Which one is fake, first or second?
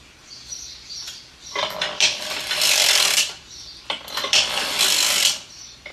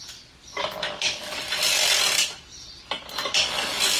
first